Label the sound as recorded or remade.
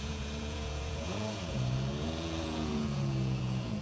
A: remade